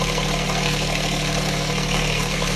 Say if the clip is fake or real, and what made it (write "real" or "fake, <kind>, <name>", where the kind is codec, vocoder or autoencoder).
fake, codec, SNAC